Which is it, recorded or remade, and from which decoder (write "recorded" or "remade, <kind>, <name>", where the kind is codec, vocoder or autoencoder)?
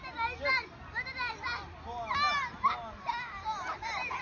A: recorded